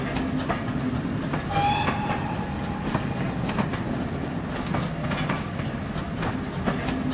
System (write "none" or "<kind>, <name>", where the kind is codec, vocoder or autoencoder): none